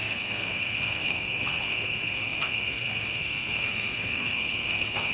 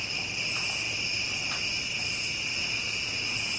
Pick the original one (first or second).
second